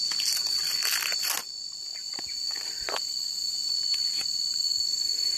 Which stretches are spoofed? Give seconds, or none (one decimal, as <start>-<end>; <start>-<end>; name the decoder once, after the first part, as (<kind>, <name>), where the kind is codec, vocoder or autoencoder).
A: 1.9-5.4 (vocoder, BigVGAN v2)